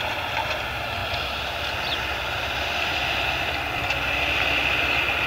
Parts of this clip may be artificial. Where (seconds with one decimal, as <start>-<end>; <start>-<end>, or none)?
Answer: none